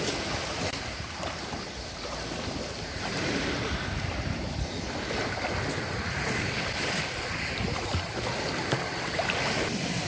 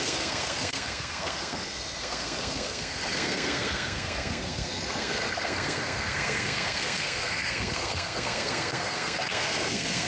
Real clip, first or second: first